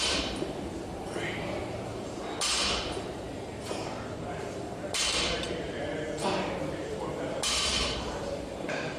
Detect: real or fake fake